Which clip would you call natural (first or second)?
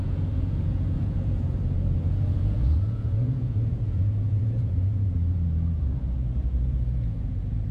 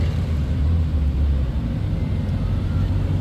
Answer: second